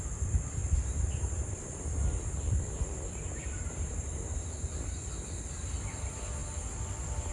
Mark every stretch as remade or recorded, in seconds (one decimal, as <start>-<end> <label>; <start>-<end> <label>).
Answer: 0.0-0.6 recorded; 0.6-5.0 remade; 5.0-7.3 recorded